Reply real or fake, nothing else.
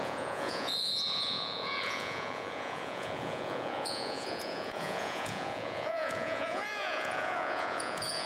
fake